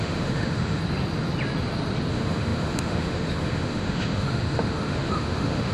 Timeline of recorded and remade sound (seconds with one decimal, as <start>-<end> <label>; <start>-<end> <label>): 0.0-0.8 remade; 0.8-2.1 recorded; 2.1-5.7 remade